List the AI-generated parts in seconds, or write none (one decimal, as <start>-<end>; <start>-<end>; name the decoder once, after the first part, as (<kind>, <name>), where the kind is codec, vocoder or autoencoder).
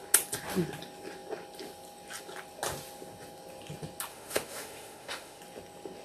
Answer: 4.1-5.4 (autoencoder, DAC-VAE)